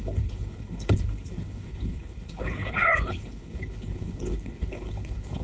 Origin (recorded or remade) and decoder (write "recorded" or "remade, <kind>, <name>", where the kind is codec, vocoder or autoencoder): remade, codec, HILCodec